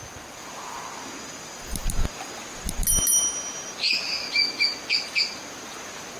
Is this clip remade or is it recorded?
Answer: recorded